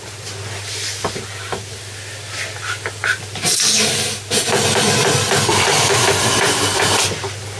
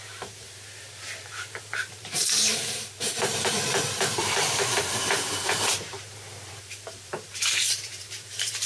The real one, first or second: first